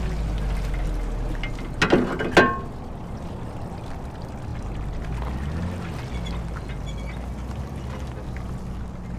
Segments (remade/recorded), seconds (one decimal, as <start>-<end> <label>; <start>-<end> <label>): 0.0-9.2 recorded